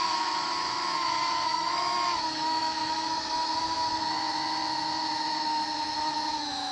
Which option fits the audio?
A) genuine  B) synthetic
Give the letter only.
B